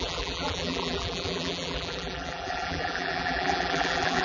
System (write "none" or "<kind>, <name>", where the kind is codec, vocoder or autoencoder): vocoder, BigVGAN v2